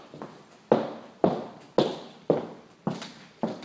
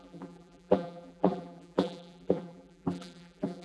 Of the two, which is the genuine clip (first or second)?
first